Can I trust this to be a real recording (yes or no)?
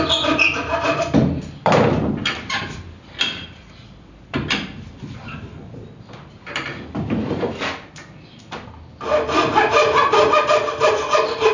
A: no